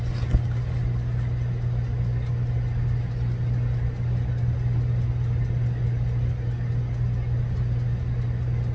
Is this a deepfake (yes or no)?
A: no